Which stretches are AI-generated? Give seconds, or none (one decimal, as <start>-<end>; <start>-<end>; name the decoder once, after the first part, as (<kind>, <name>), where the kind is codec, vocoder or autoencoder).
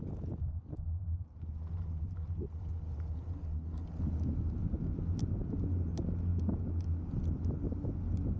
none